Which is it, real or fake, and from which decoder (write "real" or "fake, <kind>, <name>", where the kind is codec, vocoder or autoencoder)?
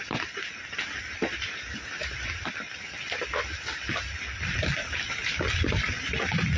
real